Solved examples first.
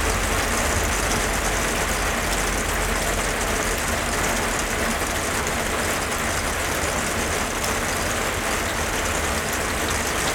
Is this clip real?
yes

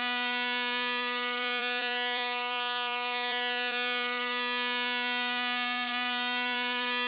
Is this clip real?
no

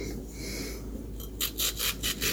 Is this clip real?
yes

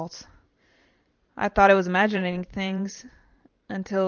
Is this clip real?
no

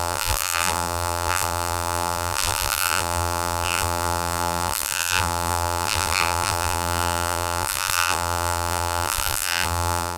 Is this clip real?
no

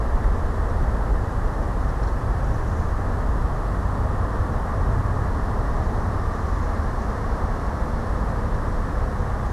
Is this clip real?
yes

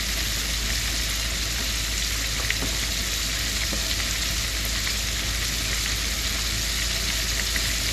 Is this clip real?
yes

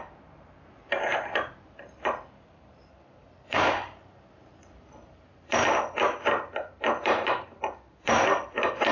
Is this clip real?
no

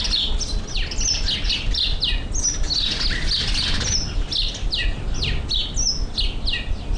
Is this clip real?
yes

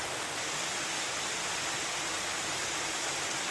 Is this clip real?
yes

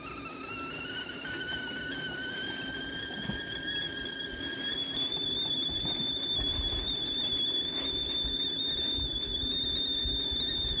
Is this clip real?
no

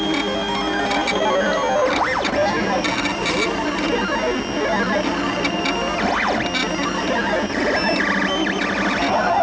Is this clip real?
yes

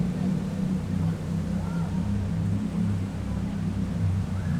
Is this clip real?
no